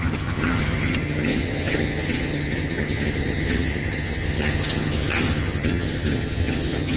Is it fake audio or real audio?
fake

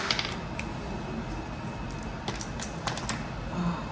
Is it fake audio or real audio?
real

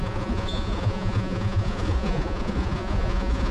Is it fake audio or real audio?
fake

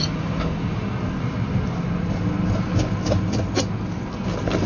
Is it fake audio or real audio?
real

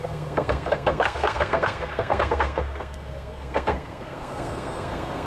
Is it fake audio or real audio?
fake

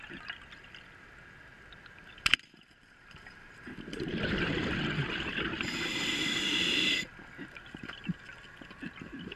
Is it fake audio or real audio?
real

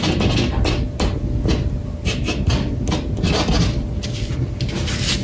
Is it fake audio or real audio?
real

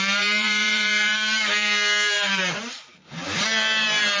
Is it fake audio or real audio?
fake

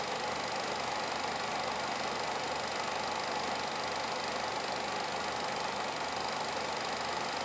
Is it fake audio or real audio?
real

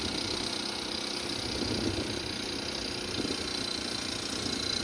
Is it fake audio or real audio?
real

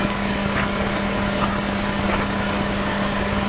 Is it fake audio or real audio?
fake